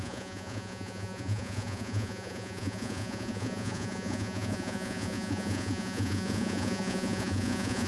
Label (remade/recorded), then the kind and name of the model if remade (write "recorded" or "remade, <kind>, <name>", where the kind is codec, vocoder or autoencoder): remade, vocoder, Vocos